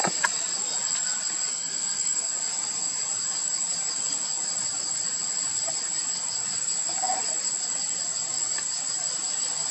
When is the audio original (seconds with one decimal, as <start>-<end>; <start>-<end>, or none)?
0.0-1.5; 2.3-9.7